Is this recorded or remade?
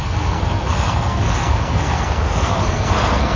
remade